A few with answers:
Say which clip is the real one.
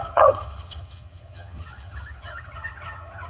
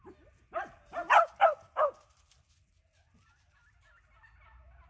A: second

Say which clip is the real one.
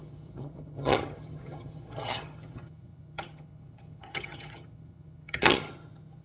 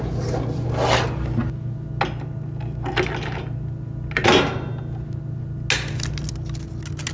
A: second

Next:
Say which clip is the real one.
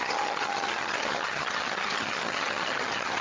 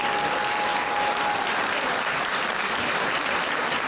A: second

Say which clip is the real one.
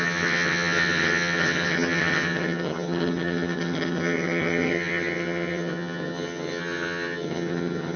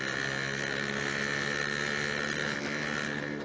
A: second